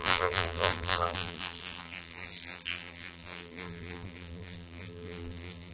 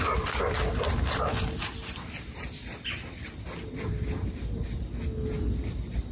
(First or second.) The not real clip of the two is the first